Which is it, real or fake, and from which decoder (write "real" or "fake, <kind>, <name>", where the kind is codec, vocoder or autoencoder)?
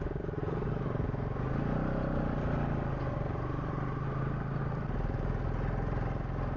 real